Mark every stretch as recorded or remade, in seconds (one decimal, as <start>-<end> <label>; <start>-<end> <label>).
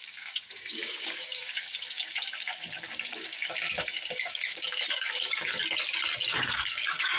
0.0-5.6 remade; 5.6-6.3 recorded; 6.3-7.2 remade